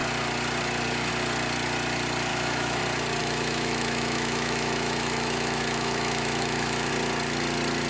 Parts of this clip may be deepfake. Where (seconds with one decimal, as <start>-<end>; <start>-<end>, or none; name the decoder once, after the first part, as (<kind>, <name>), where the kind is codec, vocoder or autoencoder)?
2.3-2.8 (autoencoder, DAC-VAE); 3.2-6.9